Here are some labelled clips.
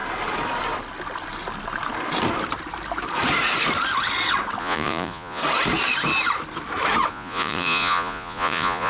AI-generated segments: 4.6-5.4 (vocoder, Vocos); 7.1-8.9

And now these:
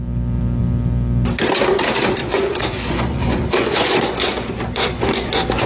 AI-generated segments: 2.2-5.7 (vocoder, Vocos)

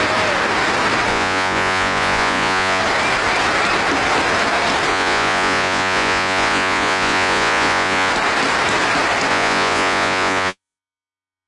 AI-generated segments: 1.1-2.8 (vocoder, Vocos); 4.9-8.1; 9.3-11.5

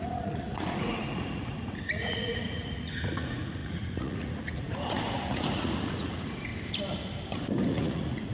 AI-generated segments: 0.0-6.5 (vocoder, Vocos); 7.7-8.3

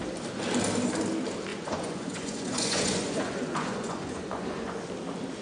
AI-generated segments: 1.5-4.7 (vocoder, Vocos)